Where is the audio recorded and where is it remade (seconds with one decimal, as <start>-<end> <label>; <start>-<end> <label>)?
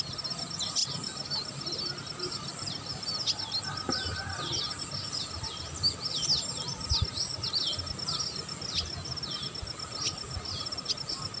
0.0-11.4 recorded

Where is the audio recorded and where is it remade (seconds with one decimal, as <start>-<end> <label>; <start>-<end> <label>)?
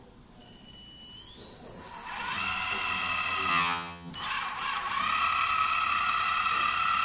0.0-3.5 recorded; 3.5-4.1 remade; 4.1-7.0 recorded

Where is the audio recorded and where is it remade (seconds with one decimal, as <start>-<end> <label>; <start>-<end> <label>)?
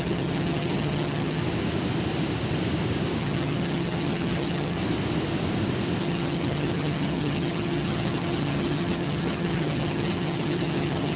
0.0-1.4 remade; 1.4-3.2 recorded; 3.2-4.8 remade; 4.8-6.0 recorded; 6.0-11.2 remade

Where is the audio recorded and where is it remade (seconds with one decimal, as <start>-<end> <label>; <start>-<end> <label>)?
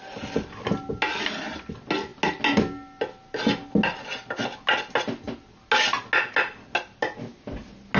0.0-8.0 recorded